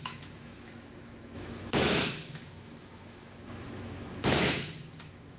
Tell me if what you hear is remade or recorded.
remade